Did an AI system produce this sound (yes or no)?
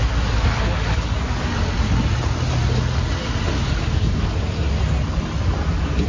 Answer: no